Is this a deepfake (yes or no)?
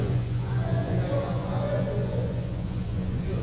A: yes